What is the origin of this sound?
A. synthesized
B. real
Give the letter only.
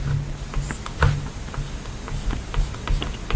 B